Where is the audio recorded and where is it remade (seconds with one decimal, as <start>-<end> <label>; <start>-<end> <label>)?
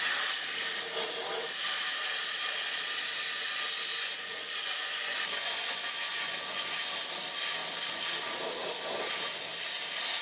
0.0-3.9 recorded; 3.9-6.7 remade; 6.7-10.2 recorded